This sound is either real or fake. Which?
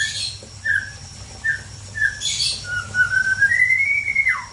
real